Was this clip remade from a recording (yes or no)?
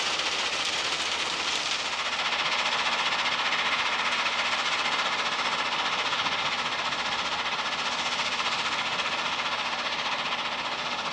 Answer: no